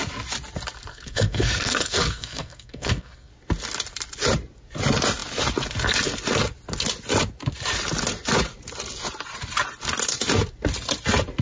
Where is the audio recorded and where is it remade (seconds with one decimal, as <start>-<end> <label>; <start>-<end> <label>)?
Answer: 0.0-0.9 recorded; 0.9-3.3 remade; 3.3-11.4 recorded